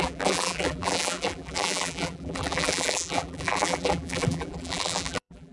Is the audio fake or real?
fake